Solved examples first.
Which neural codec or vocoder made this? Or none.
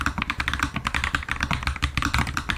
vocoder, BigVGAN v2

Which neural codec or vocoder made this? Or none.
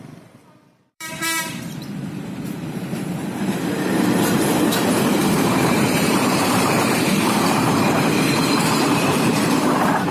vocoder, BigVGAN v2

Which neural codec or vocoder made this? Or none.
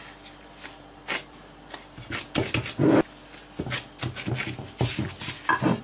none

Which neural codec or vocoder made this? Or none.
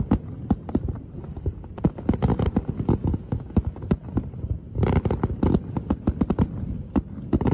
none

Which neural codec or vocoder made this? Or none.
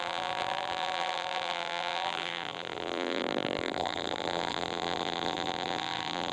vocoder, BigVGAN v2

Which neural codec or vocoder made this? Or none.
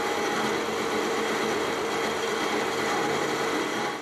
none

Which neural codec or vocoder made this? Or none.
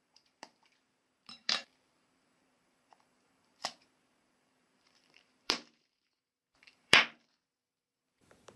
vocoder, BigVGAN v2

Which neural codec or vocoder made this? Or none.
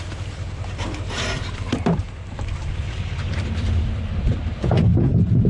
vocoder, BigVGAN v2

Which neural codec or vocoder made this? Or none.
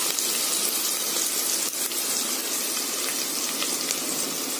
none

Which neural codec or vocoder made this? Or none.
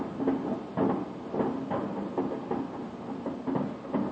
none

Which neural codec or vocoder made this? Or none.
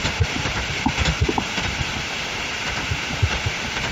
vocoder, BigVGAN v2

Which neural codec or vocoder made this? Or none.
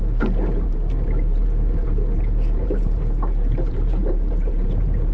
vocoder, BigVGAN v2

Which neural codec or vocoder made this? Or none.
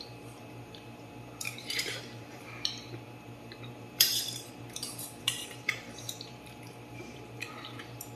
vocoder, BigVGAN v2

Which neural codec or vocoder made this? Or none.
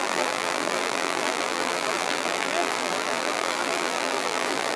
vocoder, BigVGAN v2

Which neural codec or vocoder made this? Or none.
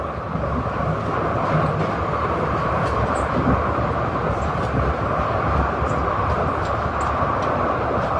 none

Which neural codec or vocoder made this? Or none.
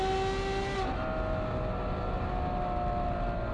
none